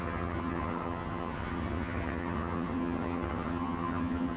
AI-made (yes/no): yes